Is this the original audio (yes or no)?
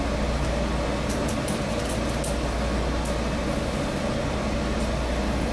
yes